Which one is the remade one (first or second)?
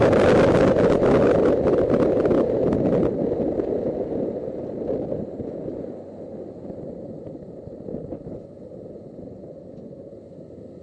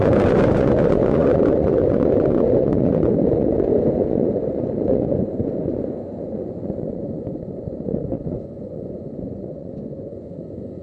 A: second